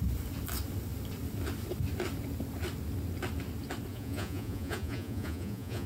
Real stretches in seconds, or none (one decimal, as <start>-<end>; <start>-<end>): 0.0-3.9